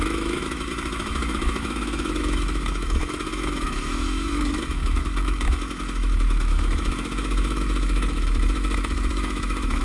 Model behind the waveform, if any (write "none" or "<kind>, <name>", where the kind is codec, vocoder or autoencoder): autoencoder, DAC-VAE